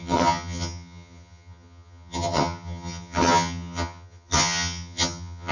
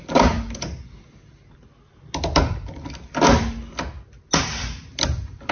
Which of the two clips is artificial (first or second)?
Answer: first